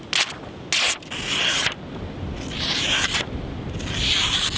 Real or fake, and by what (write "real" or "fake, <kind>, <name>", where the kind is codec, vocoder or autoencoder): real